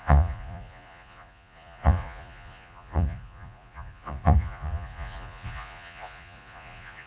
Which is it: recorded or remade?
remade